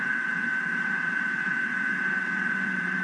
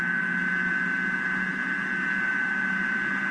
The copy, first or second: first